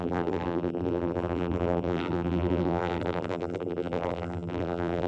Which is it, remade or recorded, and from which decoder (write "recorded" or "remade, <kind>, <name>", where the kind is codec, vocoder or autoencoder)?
remade, vocoder, BigVGAN v2